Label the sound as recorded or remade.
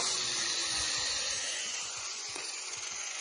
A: remade